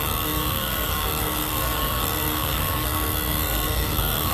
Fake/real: fake